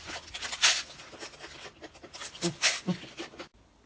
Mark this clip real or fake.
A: real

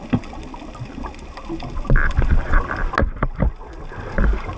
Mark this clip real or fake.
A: real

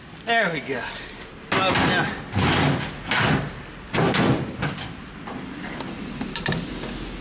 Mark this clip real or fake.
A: real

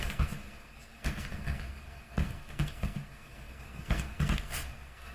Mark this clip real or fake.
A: fake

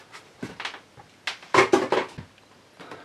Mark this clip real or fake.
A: real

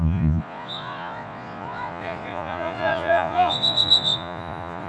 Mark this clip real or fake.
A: fake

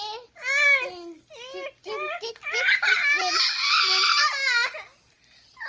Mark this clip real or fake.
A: real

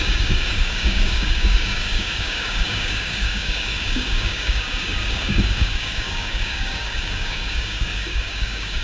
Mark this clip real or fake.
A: fake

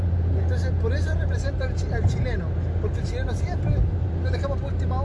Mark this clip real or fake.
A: real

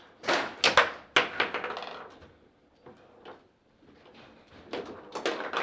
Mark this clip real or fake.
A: real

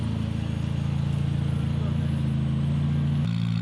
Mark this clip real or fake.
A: real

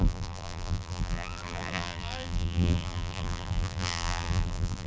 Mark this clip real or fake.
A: fake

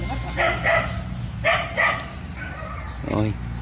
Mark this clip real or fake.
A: real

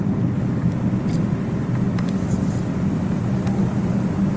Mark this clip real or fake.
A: real